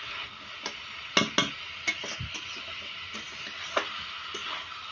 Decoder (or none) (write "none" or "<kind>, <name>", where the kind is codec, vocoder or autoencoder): none